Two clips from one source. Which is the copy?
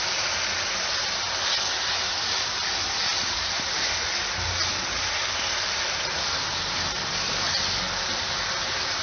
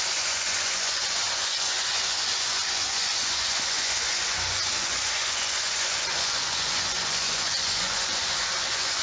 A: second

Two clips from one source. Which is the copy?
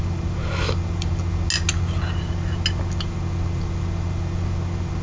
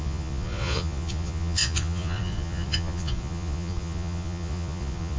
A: second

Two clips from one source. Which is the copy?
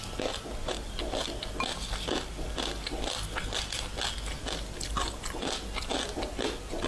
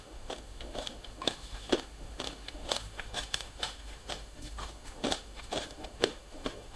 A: second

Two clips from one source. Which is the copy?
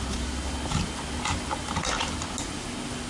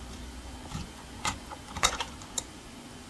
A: second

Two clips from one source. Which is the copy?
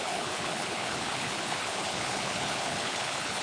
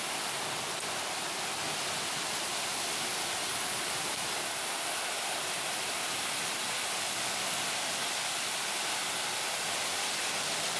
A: first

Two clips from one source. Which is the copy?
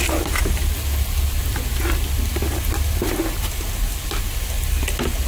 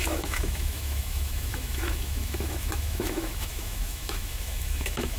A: second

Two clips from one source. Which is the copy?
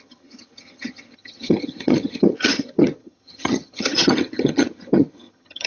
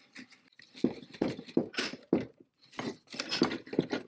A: first